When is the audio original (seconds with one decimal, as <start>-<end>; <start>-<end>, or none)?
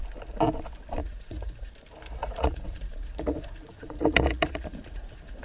0.0-1.0; 1.7-2.2